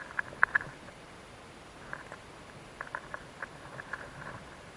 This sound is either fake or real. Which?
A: real